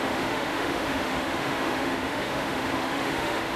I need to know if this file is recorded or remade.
remade